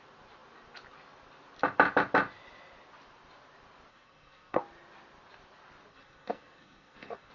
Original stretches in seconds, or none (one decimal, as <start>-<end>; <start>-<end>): 0.0-3.9; 4.6-5.9